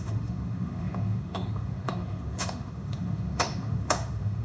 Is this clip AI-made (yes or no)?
yes